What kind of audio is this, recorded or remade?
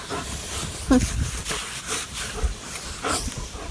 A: remade